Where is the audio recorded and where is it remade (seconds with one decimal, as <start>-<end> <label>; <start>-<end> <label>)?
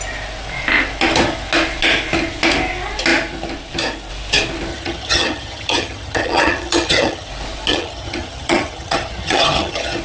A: 0.0-4.7 recorded; 4.7-7.3 remade; 7.3-7.7 recorded; 7.7-10.0 remade